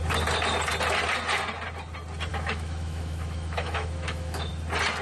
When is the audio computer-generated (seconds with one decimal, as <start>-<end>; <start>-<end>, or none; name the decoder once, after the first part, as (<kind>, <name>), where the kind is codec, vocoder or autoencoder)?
2.3-4.5 (autoencoder, DAC-VAE)